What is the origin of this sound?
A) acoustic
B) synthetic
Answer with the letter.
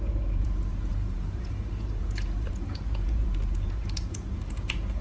B